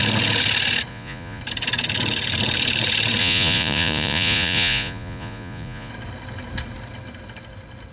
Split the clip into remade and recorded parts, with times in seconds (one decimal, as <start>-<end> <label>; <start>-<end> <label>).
0.0-0.9 recorded; 0.9-1.4 remade; 1.4-3.2 recorded; 3.2-5.9 remade; 5.9-7.9 recorded